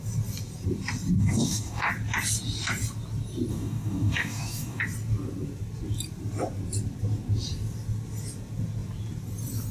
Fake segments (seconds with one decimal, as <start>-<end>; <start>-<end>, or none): 1.2-1.9; 3.5-4.8